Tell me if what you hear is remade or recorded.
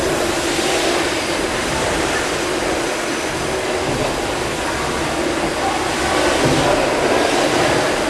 recorded